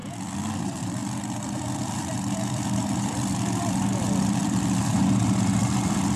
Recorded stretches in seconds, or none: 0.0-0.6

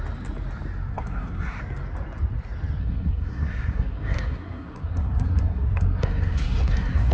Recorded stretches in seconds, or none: 0.0-0.9; 1.6-2.8

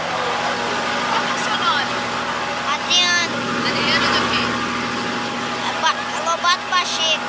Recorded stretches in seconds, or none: 0.0-7.3

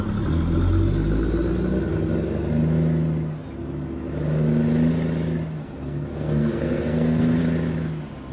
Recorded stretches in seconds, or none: 0.0-5.6; 7.4-8.3

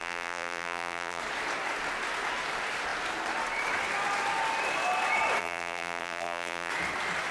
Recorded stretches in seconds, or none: 1.2-5.4; 6.7-7.3

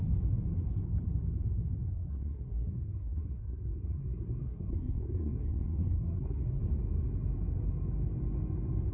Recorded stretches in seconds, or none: 0.0-1.9; 6.6-8.9